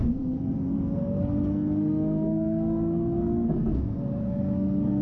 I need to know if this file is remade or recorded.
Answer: remade